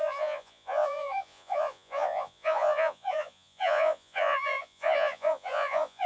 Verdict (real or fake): fake